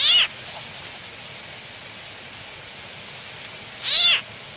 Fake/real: real